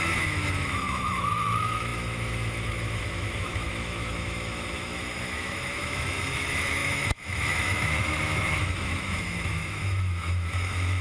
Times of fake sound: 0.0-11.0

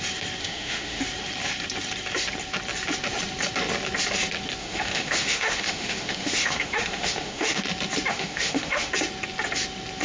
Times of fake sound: 0.4-1.0; 4.6-7.6; 8.1-8.9

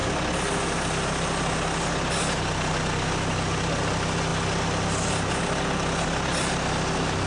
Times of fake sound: none

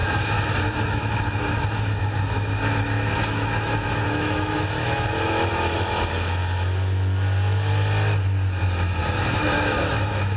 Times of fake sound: 0.0-6.4; 9.0-10.4

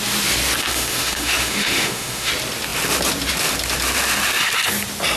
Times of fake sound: 0.6-2.3

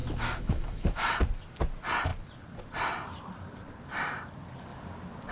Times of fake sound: 0.0-1.2

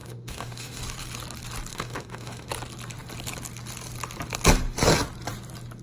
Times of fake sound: 0.0-0.8; 1.7-2.5

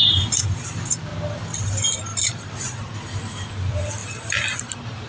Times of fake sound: none